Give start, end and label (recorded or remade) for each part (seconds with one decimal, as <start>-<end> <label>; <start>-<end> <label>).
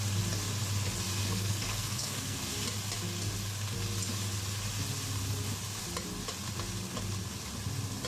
0.0-1.2 recorded; 1.2-2.4 remade; 2.4-8.1 recorded